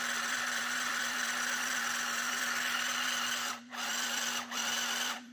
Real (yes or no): no